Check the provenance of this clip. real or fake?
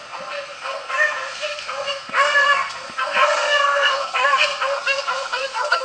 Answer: fake